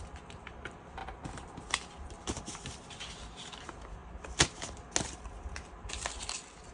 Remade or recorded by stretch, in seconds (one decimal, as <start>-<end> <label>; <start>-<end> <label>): 0.0-6.7 recorded